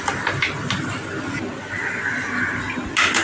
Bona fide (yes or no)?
yes